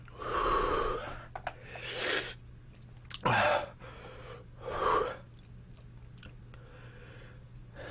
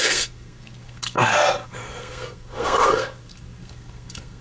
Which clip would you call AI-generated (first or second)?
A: second